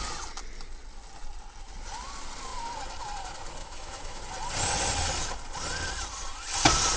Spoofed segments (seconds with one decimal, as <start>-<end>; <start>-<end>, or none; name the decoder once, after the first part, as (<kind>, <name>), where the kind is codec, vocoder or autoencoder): 3.6-4.2 (autoencoder, DAC-VAE)